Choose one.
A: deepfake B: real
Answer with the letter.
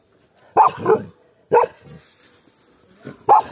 B